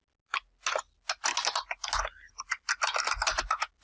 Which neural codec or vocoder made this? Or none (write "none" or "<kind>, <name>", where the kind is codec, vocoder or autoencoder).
none